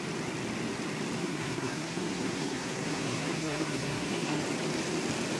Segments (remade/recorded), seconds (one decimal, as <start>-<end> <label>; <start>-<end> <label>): 0.0-1.2 recorded; 1.2-4.4 remade; 4.4-5.4 recorded